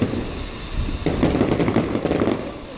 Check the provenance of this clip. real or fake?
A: real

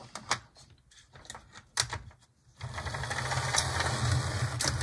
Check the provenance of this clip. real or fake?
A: real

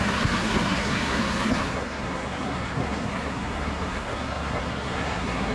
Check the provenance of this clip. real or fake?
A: fake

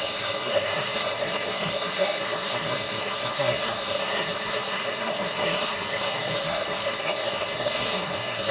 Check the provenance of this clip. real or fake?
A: fake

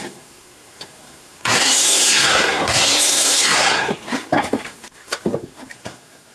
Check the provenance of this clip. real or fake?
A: fake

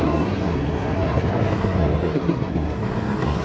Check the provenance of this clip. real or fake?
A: fake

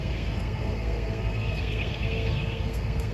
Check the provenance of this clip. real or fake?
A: fake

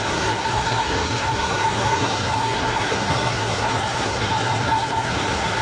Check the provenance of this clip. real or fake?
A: fake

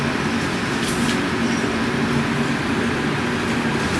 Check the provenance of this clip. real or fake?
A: real